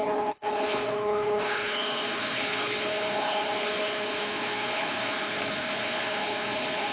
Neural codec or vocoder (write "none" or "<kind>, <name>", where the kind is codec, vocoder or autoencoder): codec, HILCodec